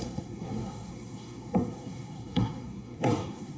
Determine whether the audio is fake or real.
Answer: fake